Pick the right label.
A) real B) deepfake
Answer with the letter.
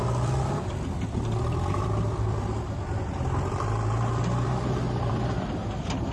B